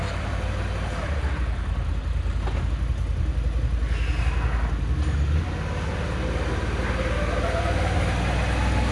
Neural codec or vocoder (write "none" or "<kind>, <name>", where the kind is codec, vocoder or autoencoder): none